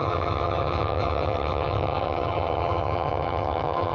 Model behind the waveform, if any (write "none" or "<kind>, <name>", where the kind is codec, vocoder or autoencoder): vocoder, HiFi-GAN